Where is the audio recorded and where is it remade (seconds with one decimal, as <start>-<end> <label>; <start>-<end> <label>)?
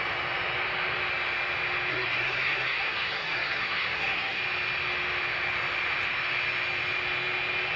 0.0-1.9 recorded; 1.9-4.4 remade; 4.4-7.8 recorded